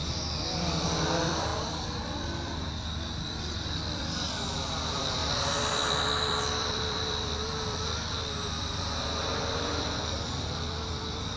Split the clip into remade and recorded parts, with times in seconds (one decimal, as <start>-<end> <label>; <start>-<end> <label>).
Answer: 0.0-11.4 remade